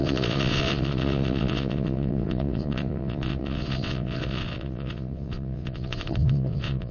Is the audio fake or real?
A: fake